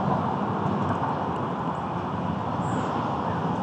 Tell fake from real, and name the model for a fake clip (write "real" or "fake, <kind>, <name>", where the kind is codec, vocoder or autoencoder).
real